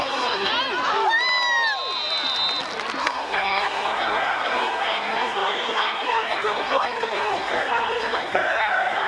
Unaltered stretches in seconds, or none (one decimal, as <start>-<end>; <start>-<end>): 0.5-3.0